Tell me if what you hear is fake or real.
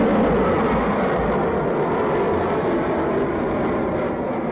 real